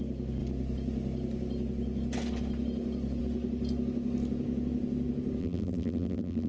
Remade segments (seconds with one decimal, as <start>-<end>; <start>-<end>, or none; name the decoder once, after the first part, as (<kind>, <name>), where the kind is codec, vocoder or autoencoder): 5.4-6.5 (vocoder, BigVGAN v2)